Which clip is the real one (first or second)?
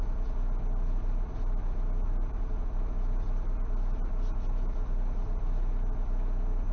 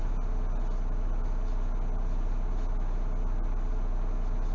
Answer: second